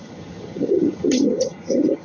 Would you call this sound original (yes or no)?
no